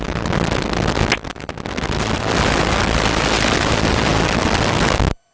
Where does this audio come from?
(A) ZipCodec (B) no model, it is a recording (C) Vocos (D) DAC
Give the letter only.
B